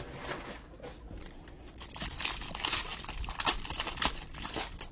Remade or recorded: recorded